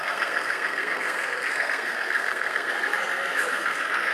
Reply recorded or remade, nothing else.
remade